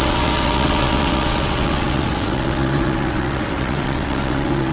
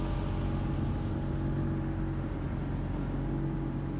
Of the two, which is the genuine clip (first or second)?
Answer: second